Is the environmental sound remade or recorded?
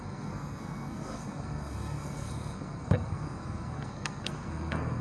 remade